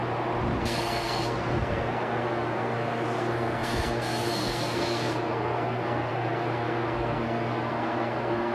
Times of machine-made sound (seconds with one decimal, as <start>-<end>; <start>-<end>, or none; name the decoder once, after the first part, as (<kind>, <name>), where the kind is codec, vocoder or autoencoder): 0.6-8.5 (codec, SNAC)